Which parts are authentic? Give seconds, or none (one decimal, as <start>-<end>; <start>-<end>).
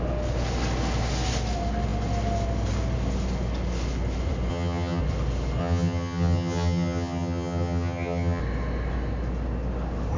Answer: 0.0-4.5; 5.0-5.6; 8.4-10.2